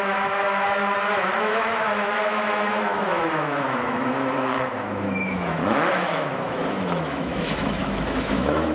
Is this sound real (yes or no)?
no